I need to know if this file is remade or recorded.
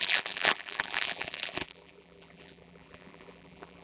remade